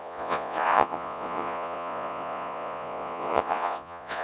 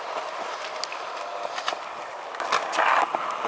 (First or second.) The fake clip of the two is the first